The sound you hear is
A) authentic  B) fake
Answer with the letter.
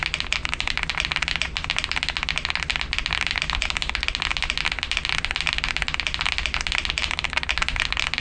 B